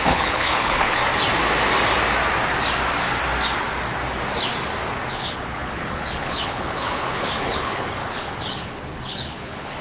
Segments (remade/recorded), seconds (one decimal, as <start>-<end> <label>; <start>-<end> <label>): 0.0-1.0 remade; 1.0-5.1 recorded; 5.1-9.8 remade